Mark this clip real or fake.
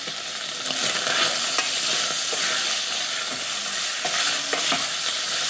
real